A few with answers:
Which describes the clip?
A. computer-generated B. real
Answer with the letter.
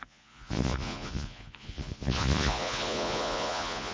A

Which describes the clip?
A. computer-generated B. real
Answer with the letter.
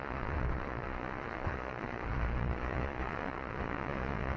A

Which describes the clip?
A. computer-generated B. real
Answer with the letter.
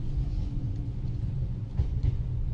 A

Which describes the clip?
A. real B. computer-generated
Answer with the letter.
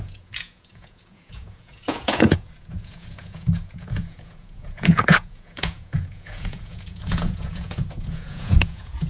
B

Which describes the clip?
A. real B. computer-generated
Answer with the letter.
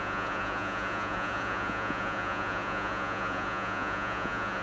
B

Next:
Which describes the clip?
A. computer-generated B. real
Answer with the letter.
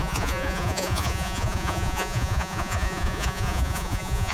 A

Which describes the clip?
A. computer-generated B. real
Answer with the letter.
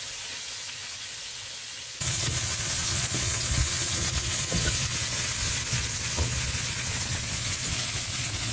A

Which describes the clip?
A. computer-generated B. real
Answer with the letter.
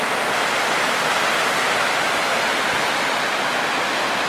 B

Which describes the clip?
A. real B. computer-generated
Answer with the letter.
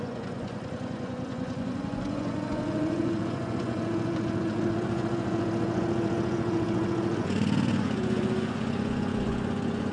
B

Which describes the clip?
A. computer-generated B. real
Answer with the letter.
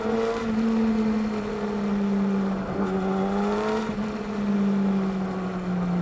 B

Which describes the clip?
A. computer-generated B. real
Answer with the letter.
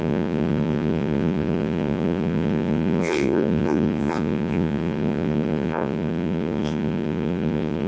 A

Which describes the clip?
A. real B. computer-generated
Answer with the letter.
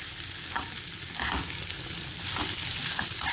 A